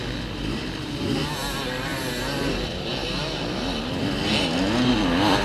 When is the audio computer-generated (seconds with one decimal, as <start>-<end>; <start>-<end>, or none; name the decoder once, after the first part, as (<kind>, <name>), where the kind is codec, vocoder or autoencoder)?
none